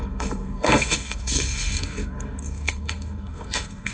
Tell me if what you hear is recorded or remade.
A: remade